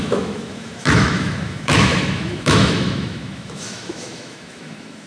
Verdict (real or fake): fake